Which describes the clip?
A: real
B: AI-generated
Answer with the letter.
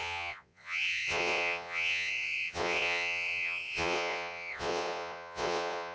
B